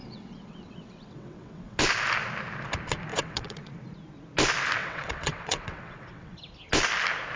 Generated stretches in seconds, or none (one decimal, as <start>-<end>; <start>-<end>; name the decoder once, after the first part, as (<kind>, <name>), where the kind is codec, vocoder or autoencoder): 0.0-1.8 (vocoder, WaveNeXt); 3.1-3.7; 4.8-6.4